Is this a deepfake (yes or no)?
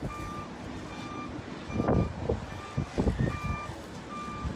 no